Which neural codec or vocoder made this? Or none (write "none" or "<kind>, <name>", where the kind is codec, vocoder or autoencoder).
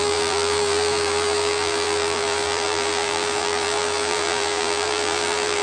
vocoder, BigVGAN v2